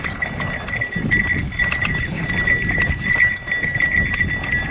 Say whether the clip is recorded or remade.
recorded